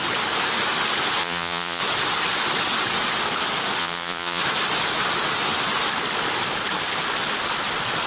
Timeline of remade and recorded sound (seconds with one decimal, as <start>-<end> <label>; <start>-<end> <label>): 0.0-1.2 recorded; 1.2-1.8 remade; 1.8-3.8 recorded; 3.8-4.4 remade; 4.4-8.1 recorded